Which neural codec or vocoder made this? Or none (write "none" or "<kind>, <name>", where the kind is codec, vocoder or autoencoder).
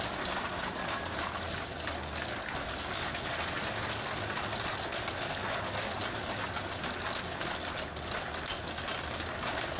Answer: none